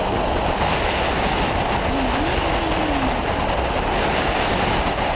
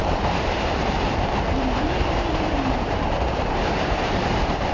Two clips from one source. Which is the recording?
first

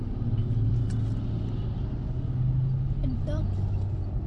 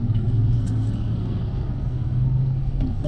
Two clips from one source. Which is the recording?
first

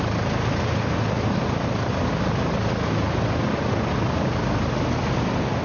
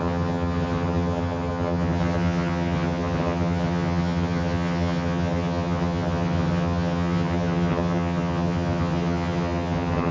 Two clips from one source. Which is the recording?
first